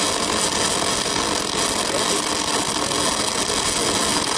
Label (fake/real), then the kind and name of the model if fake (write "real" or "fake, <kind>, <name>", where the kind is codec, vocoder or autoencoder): real